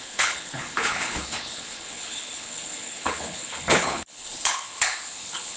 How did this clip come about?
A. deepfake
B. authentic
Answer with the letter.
A